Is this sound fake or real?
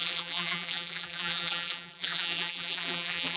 fake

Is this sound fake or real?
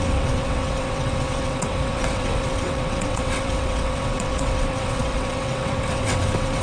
fake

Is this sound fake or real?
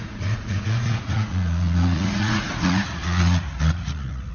fake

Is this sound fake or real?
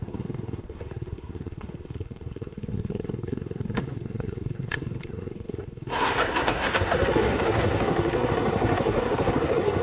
fake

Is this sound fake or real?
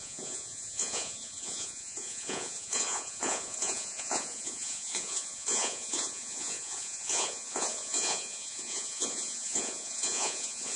fake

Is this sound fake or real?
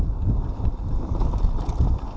real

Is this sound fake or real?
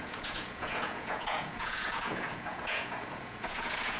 fake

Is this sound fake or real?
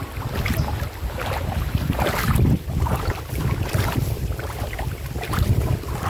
fake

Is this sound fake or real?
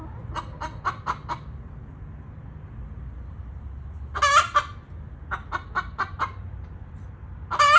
real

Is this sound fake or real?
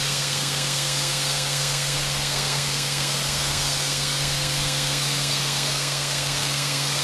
fake